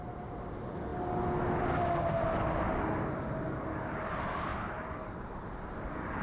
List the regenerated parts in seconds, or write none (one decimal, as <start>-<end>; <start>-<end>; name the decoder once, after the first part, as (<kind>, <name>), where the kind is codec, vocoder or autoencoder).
none